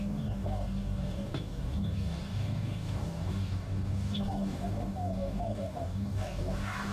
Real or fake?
fake